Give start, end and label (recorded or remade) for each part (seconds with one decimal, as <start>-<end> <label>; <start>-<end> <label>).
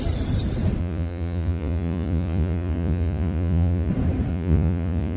0.0-0.8 recorded; 0.8-3.9 remade; 3.9-4.3 recorded; 4.3-5.2 remade